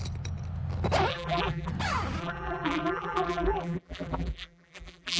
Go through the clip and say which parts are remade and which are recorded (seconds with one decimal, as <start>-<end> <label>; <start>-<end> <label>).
0.0-1.1 recorded; 1.1-1.7 remade; 1.7-2.2 recorded; 2.2-5.2 remade